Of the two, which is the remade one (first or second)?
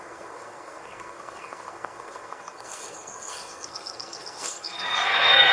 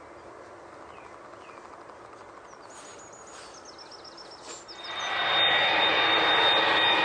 first